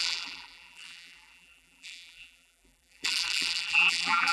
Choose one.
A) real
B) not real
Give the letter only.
B